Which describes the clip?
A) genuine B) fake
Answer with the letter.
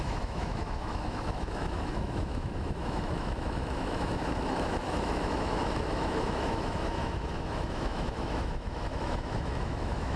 B